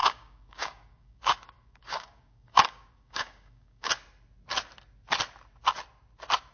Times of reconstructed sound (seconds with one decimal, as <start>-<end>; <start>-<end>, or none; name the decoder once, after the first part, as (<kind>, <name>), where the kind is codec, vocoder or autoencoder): 0.0-3.9 (codec, DAC)